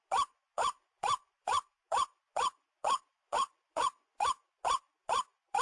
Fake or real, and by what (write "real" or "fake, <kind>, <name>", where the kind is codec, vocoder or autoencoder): fake, vocoder, Vocos